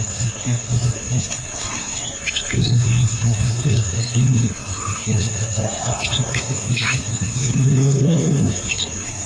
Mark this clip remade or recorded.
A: remade